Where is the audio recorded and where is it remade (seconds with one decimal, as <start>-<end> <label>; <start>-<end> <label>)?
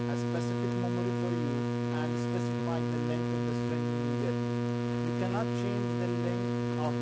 0.0-7.0 recorded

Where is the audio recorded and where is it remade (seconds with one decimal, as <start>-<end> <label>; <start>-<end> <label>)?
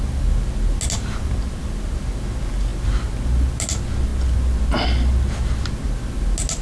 0.0-6.6 recorded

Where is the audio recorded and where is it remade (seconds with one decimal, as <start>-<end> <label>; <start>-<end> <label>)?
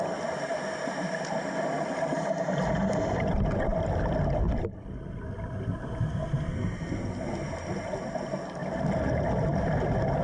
0.0-10.2 recorded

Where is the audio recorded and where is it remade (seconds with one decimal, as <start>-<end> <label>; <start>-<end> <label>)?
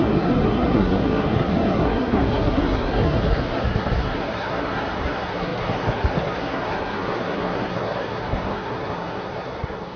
0.0-10.0 remade